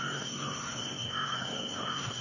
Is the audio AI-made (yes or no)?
yes